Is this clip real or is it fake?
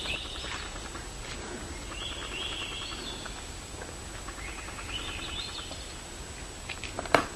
real